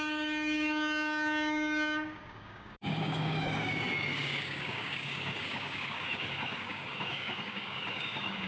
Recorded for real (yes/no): no